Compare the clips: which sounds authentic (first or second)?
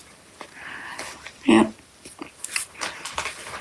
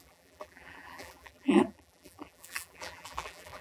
first